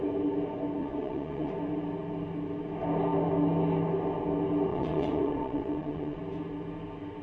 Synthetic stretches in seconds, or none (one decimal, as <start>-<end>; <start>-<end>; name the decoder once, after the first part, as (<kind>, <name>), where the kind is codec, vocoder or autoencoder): 0.8-1.5 (vocoder, WaveNeXt); 4.7-6.2